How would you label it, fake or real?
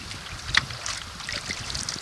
real